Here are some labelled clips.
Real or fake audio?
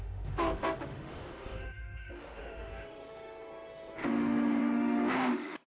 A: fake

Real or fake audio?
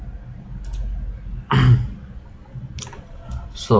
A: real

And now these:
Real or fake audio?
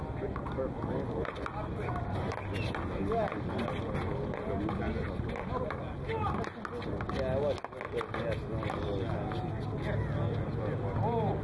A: real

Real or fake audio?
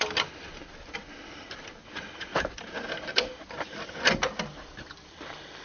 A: fake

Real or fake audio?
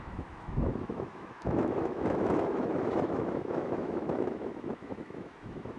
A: fake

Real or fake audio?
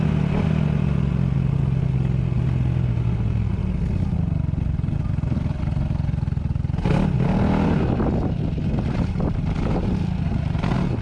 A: real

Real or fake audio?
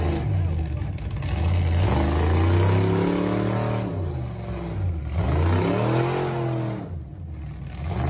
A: real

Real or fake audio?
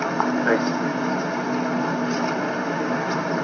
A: real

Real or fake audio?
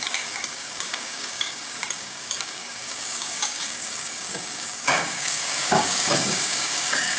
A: fake